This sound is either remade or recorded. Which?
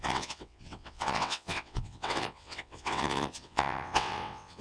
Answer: remade